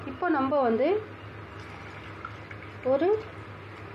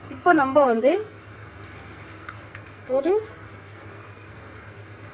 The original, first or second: first